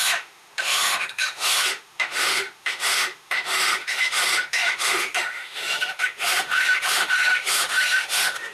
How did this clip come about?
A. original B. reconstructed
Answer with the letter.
B